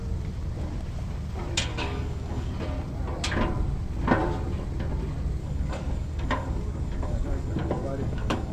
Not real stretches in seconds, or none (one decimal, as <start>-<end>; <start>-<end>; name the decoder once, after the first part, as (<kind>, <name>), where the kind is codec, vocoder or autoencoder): 1.7-2.5 (codec, DAC); 5.4-8.5